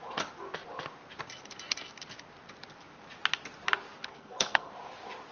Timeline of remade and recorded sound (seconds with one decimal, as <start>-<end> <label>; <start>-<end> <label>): 0.0-4.1 recorded; 4.1-4.7 remade; 4.7-5.3 recorded